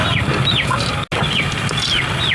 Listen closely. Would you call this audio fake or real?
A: real